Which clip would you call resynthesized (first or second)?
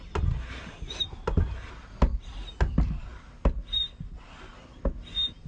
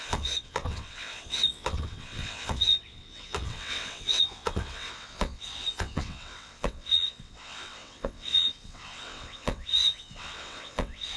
second